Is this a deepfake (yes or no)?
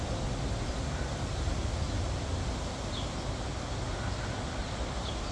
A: no